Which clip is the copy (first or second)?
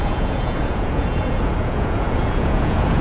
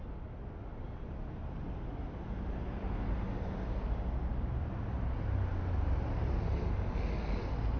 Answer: first